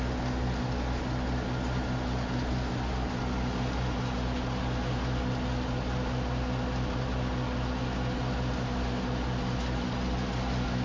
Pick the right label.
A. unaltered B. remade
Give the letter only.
A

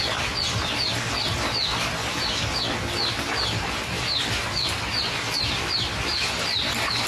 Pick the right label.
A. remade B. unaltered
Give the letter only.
B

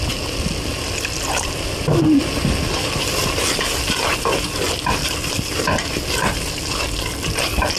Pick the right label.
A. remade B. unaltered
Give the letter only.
B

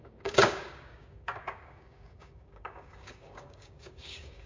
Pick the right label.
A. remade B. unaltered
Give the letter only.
A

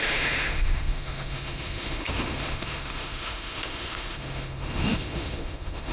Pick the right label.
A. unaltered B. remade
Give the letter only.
B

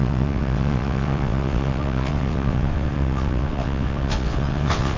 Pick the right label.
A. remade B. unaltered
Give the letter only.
A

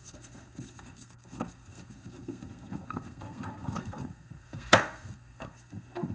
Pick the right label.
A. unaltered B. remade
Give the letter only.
B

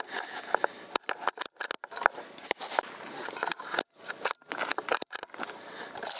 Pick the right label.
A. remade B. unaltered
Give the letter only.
B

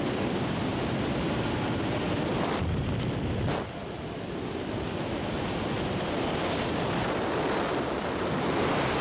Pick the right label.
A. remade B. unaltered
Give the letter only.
B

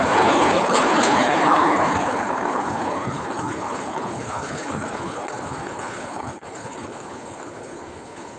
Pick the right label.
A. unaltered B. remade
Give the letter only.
B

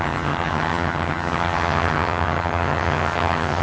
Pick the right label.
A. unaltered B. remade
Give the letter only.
B